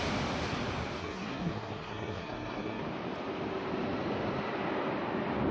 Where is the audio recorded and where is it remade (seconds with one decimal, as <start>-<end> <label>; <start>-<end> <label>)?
0.0-1.0 recorded; 1.0-2.8 remade; 2.8-5.5 recorded